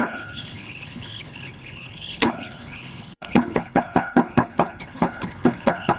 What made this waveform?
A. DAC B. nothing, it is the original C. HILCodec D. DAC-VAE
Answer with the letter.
C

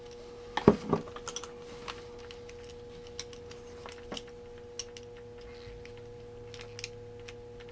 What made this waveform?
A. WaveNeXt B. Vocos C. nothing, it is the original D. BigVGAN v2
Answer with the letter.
C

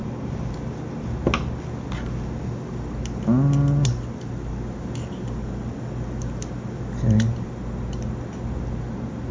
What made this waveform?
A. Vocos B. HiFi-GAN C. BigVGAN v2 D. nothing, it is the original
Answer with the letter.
D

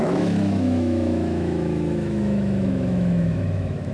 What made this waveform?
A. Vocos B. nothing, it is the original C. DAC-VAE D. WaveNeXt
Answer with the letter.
C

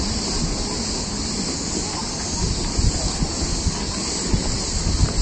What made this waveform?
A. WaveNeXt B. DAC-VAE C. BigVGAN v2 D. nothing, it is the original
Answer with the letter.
D